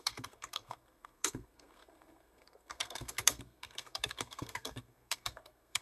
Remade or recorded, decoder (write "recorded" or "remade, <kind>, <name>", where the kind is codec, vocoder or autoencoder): remade, codec, SNAC